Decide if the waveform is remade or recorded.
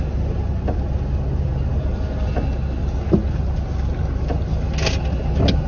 recorded